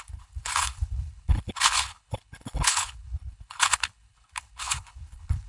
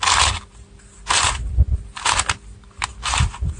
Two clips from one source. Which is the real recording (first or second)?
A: second